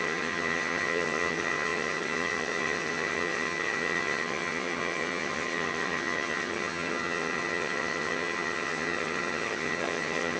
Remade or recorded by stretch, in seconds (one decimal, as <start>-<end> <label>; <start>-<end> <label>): 0.0-10.4 remade